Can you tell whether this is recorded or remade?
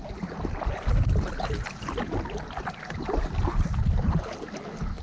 recorded